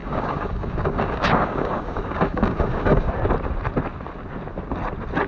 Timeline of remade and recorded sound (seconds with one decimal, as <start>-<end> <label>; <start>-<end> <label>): 0.0-3.1 remade; 3.1-5.3 recorded